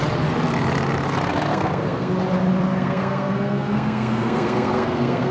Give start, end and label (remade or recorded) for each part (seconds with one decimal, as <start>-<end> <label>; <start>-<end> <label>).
0.0-1.5 recorded; 1.5-2.1 remade; 2.1-2.7 recorded; 2.7-5.3 remade